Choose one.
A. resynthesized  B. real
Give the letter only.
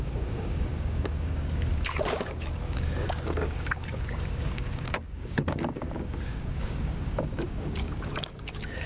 A